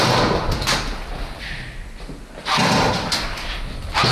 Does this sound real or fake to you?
real